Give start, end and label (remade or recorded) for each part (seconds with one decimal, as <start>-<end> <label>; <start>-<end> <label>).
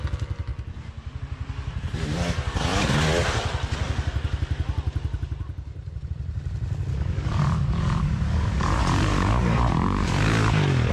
0.0-6.9 recorded; 6.9-10.9 remade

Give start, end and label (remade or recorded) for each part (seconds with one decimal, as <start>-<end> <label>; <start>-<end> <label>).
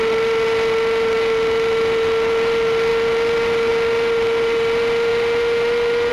0.0-6.1 recorded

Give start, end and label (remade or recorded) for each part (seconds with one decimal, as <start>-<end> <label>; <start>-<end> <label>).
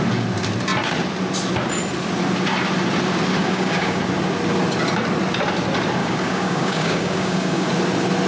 0.0-3.4 recorded; 3.4-4.0 remade; 4.0-6.0 recorded; 6.0-7.7 remade; 7.7-8.3 recorded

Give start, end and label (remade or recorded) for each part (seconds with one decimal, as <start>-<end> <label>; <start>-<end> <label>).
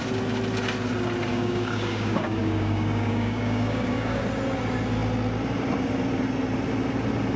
0.0-1.3 recorded; 1.3-4.2 remade; 4.2-7.4 recorded